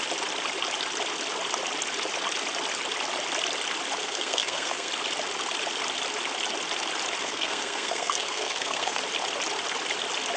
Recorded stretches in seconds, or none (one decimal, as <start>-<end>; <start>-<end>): 0.0-4.0; 4.9-7.2; 9.0-10.4